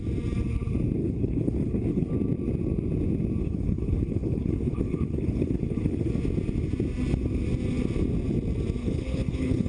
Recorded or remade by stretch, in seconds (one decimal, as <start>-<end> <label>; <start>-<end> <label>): 0.0-1.0 recorded; 1.0-2.1 remade; 2.1-3.4 recorded; 3.4-6.1 remade; 6.1-8.8 recorded; 8.8-9.7 remade